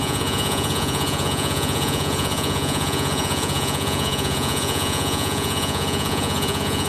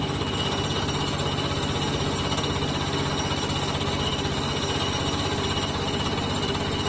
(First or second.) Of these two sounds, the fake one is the first